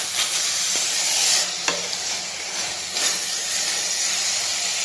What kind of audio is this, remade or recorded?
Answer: remade